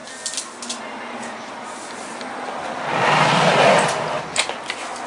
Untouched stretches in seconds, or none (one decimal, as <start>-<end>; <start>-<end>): 0.0-5.1